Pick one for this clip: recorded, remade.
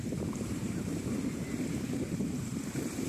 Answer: remade